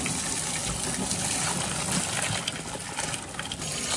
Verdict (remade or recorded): recorded